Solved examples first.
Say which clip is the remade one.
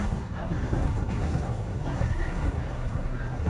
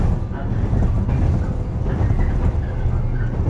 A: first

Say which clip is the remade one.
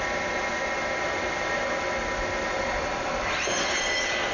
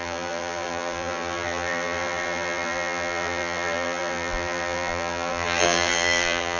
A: second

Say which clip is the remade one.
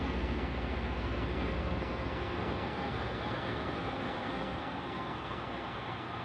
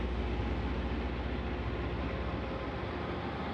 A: first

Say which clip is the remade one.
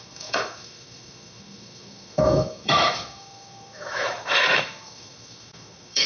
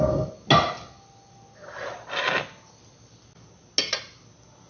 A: first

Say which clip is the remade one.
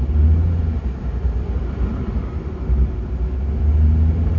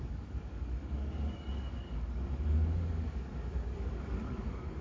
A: second